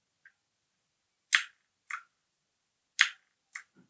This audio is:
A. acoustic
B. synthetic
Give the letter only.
A